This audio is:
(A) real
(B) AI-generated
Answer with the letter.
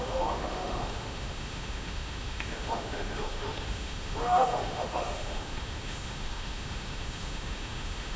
B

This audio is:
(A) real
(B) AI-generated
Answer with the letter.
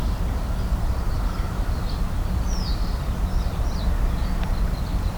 A